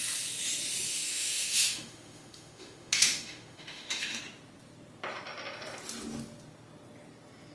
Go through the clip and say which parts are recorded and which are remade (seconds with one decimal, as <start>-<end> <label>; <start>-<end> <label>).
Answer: 0.0-0.9 recorded; 0.9-4.2 remade; 4.2-7.5 recorded